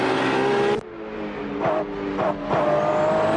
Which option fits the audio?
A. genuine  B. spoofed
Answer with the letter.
A